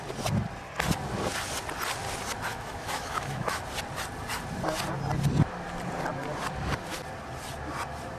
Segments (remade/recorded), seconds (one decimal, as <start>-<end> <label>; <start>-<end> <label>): 0.0-2.5 recorded; 2.5-3.6 remade; 3.6-8.2 recorded